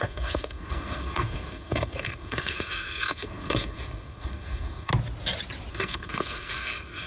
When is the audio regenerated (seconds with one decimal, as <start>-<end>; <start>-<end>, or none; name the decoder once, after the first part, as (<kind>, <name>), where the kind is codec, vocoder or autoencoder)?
0.0-4.9 (codec, SNAC); 5.7-7.1